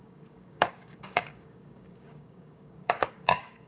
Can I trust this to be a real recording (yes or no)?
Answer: no